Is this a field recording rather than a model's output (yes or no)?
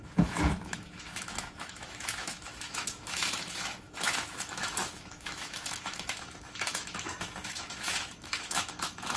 no